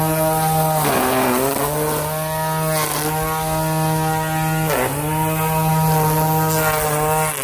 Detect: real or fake real